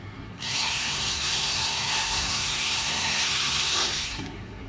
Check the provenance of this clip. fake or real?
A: fake